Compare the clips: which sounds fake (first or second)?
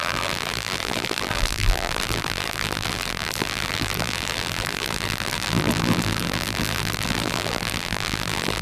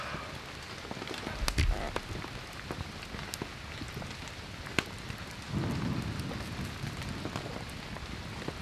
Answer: first